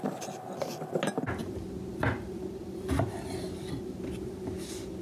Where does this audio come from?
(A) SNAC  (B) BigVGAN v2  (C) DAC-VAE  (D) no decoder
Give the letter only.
D